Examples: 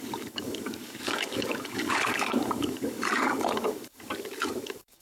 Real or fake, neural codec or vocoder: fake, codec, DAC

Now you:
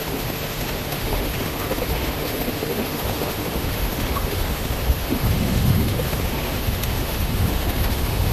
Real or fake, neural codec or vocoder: fake, autoencoder, DAC-VAE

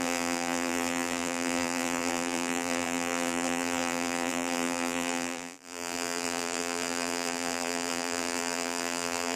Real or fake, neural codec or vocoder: fake, vocoder, BigVGAN v2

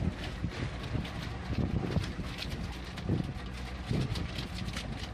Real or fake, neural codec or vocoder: real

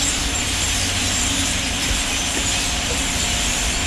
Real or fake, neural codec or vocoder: real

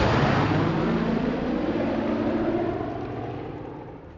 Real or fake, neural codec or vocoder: real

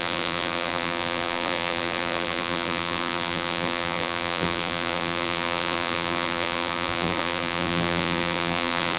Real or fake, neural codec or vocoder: fake, vocoder, BigVGAN v2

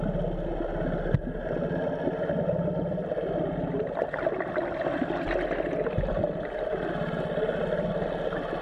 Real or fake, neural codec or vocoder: real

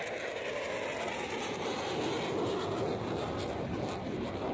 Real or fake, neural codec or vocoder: real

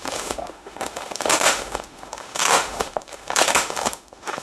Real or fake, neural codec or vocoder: fake, autoencoder, DAC-VAE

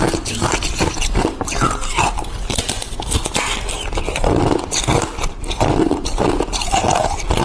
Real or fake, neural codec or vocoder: real